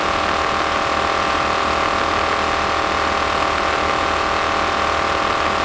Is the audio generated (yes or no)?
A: no